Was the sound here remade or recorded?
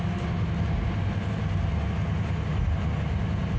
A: recorded